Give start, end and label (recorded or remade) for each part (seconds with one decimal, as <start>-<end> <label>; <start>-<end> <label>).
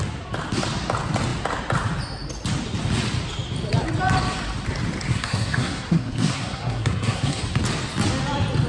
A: 0.0-5.1 recorded; 5.1-7.4 remade; 7.4-8.7 recorded